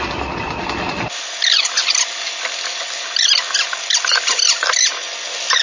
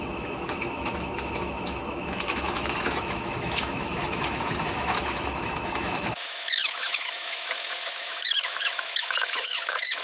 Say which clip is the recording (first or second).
first